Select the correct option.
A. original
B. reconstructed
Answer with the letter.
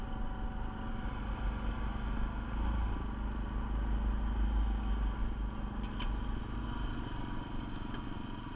A